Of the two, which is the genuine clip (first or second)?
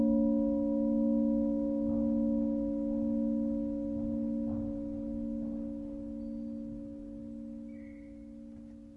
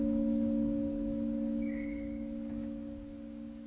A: first